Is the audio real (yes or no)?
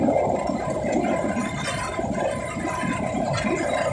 yes